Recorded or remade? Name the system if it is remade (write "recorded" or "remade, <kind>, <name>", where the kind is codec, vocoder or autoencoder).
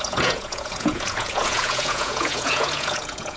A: remade, vocoder, Vocos